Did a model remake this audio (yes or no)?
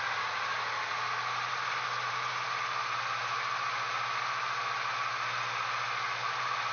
no